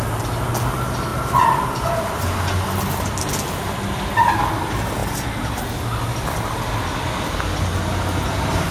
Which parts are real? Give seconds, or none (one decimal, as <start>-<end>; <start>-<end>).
0.0-1.1; 4.3-5.0; 5.6-8.7